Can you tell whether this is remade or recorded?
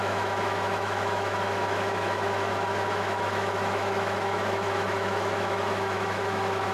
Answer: remade